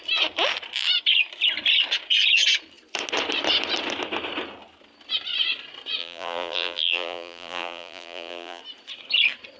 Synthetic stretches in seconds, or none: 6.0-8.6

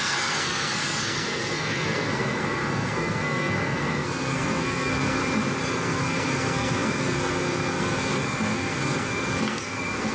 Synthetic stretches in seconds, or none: 0.0-5.2; 5.7-10.1

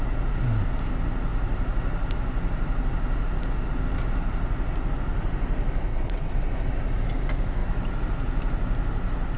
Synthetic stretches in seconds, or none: 5.9-6.5

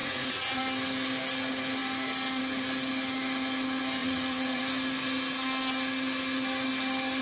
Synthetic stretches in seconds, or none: 0.0-0.6; 4.0-4.6

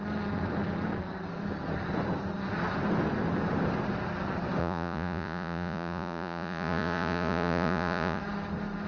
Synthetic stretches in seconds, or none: 4.6-8.2

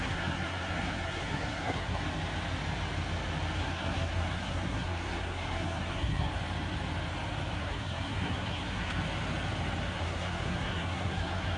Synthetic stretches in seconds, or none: 0.0-2.0; 3.6-6.3; 7.6-9.0; 9.9-11.6

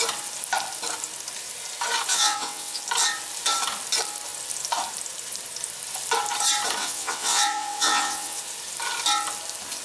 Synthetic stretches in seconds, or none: 2.1-2.8; 6.8-8.4